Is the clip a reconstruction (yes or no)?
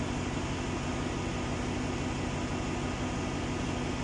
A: no